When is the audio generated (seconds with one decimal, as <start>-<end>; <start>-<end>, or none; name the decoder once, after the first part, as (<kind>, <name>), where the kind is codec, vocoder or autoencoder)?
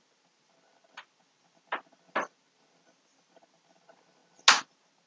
none